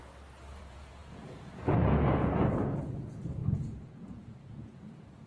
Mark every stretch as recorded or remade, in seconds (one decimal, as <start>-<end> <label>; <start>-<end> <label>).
0.0-0.6 recorded; 0.6-5.3 remade